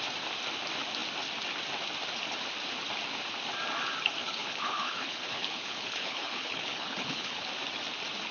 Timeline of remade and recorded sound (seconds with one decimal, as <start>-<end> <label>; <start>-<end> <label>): 0.0-4.2 recorded; 4.2-7.5 remade; 7.5-8.3 recorded